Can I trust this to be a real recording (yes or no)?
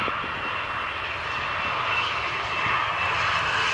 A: yes